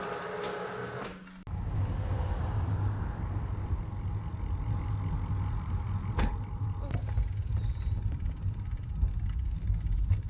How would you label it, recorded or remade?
recorded